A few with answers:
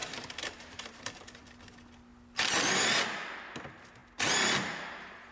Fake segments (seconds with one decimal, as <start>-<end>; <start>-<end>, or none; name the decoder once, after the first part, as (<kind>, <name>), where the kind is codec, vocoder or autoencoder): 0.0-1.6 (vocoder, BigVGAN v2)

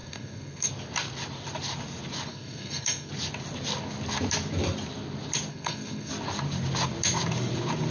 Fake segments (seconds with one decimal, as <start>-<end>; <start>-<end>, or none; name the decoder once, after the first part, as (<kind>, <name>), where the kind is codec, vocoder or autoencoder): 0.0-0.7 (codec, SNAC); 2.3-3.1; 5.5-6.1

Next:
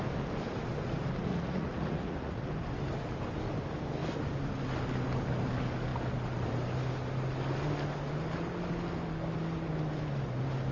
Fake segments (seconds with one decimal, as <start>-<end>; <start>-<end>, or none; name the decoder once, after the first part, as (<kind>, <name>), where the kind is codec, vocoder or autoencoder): 1.3-2.5 (vocoder, Vocos)

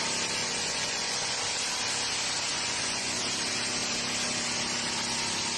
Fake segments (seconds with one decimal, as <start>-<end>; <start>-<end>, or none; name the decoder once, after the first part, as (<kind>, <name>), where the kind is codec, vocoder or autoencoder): 0.4-1.4 (vocoder, Vocos); 2.5-3.2